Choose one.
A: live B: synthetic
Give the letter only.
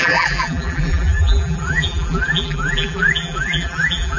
B